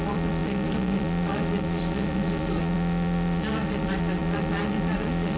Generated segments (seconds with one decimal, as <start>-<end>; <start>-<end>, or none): 0.0-5.4